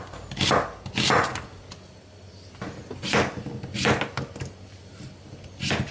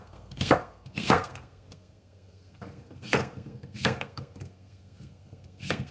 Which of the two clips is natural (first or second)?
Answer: first